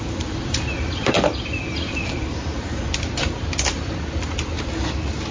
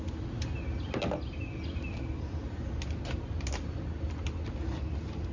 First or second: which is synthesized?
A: first